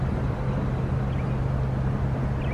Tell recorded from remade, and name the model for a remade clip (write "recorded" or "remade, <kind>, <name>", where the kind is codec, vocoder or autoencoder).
recorded